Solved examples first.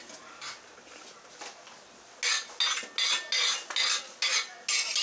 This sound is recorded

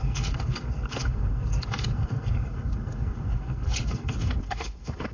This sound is remade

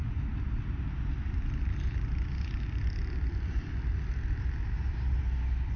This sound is recorded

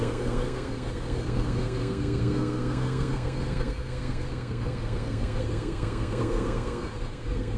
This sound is remade